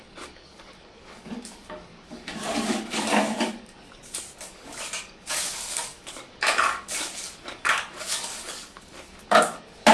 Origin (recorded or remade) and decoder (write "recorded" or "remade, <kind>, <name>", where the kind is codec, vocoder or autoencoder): remade, codec, DAC